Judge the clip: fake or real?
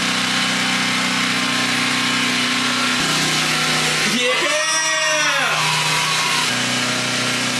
real